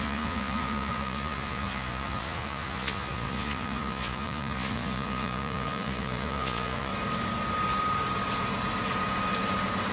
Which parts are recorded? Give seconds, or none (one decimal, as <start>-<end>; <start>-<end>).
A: 6.9-9.9